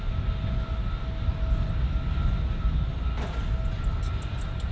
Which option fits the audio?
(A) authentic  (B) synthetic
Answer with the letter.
A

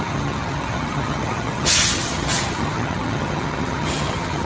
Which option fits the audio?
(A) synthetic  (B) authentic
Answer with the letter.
A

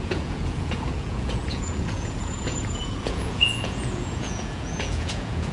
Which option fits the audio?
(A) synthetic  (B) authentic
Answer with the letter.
A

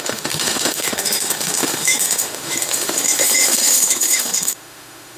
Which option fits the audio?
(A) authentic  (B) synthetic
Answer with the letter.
B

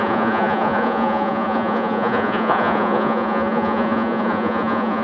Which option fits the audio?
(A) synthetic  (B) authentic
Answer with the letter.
A